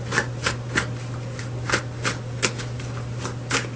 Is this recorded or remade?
recorded